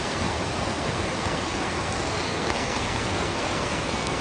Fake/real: fake